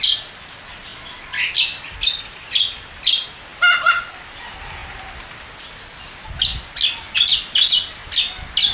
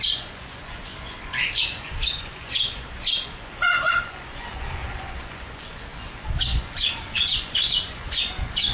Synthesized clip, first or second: second